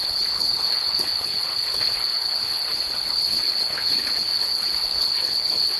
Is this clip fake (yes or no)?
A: yes